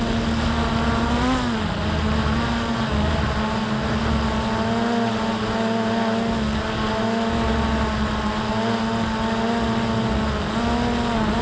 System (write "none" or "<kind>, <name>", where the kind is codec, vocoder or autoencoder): none